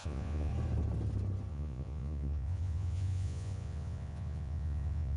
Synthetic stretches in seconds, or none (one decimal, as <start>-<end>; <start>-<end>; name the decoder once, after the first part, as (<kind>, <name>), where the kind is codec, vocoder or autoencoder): 0.0-0.5 (vocoder, Vocos); 1.5-5.2